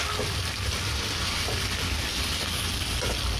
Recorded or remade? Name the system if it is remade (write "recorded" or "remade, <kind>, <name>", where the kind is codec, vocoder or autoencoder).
recorded